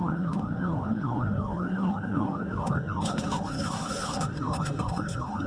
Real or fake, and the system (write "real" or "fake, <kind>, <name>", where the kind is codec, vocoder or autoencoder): fake, codec, SNAC